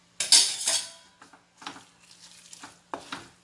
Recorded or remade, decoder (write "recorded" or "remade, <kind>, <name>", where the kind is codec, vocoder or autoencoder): recorded